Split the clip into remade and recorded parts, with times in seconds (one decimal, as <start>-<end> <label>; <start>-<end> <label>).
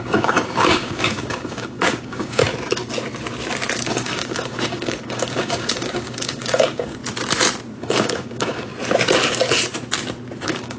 0.0-2.4 remade; 2.4-3.8 recorded; 3.8-7.0 remade; 7.0-7.8 recorded; 7.8-8.7 remade; 8.7-10.4 recorded; 10.4-10.8 remade